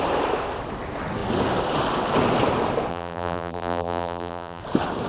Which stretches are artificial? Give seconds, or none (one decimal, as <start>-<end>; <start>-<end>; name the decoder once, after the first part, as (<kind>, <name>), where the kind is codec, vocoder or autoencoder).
2.9-4.6 (vocoder, BigVGAN v2)